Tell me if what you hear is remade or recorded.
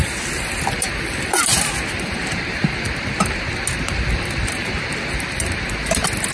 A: recorded